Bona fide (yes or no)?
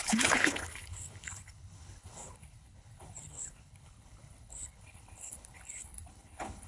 no